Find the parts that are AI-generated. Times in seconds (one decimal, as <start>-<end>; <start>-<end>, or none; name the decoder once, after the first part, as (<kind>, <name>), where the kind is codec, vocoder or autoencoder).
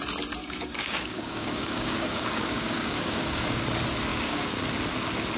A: 0.4-3.6 (codec, DAC); 4.1-4.6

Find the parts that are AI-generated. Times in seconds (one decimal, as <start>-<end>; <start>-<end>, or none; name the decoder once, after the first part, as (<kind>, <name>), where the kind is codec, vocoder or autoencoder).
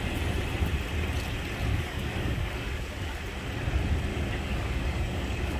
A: 1.7-3.2 (codec, DAC); 4.1-5.6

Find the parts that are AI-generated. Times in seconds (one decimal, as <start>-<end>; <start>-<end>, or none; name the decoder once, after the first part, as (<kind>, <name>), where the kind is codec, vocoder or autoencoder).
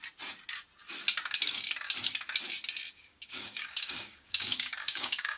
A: 3.1-5.4 (codec, DAC)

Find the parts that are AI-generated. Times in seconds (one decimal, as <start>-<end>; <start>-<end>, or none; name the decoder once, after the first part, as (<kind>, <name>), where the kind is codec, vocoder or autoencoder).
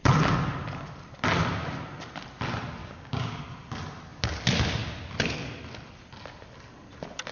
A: 2.8-3.4 (codec, DAC)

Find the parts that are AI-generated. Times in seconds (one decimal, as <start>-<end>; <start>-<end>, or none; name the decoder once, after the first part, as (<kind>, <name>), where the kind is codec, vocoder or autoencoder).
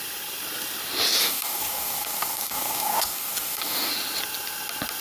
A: 1.2-3.9 (codec, DAC)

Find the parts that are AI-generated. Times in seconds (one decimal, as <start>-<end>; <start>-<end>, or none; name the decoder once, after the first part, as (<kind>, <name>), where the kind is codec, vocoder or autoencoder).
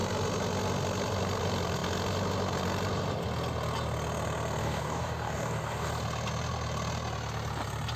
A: 4.6-5.9 (codec, DAC)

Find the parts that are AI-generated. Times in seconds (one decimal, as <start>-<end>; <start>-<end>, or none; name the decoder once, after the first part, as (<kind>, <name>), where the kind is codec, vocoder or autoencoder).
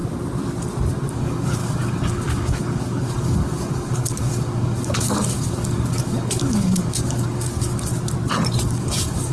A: 1.1-7.9 (codec, DAC); 8.8-9.3